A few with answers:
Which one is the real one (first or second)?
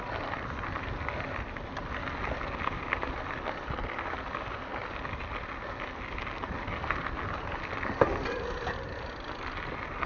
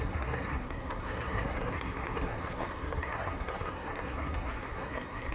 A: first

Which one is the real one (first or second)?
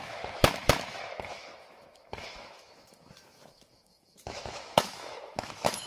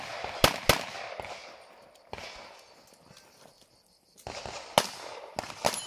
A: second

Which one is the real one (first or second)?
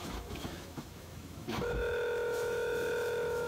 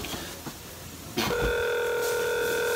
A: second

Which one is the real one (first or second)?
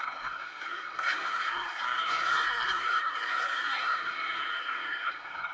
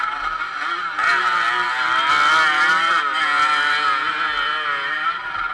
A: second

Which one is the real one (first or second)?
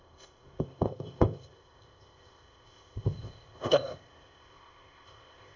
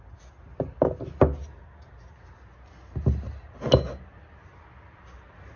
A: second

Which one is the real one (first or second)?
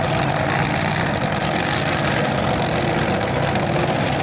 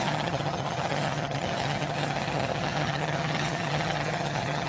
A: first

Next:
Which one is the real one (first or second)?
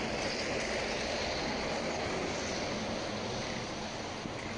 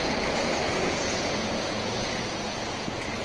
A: first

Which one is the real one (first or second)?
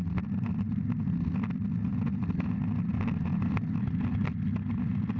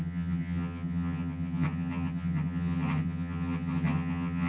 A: first